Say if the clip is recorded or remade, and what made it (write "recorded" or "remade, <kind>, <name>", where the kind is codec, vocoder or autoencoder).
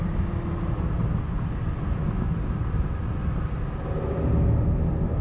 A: recorded